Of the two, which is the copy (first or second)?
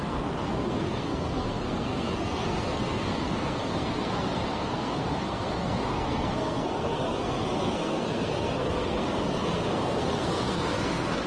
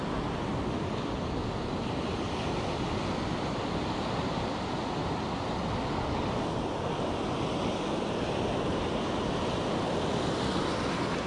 first